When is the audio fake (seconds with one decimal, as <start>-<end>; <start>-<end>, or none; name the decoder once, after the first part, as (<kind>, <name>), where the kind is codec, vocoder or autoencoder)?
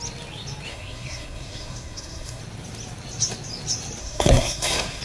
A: 0.7-2.4 (codec, SNAC); 4.0-5.0